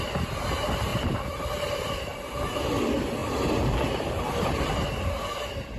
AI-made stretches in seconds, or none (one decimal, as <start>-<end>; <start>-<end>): 0.9-1.9; 3.2-5.1